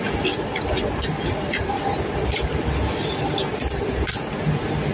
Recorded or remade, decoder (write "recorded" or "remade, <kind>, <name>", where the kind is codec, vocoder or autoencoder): recorded